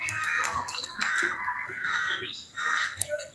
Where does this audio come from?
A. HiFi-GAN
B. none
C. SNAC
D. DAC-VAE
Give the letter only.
C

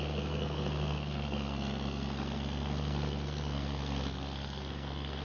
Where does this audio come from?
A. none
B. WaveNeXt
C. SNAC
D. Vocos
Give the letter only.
C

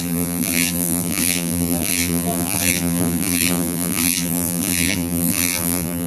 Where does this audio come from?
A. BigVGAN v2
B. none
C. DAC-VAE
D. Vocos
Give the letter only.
A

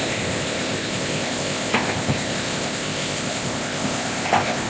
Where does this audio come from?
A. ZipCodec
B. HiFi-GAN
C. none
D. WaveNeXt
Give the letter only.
A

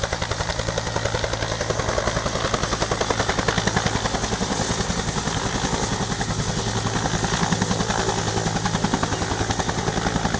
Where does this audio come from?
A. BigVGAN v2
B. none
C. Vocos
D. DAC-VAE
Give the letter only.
B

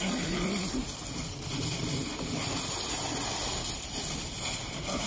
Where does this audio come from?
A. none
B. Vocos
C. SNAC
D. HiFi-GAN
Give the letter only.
A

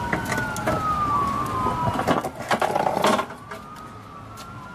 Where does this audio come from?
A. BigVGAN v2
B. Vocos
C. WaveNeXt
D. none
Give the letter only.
D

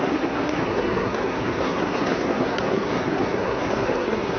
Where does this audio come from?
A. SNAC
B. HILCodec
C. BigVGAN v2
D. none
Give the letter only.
A